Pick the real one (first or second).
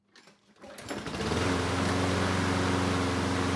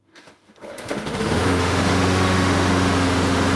first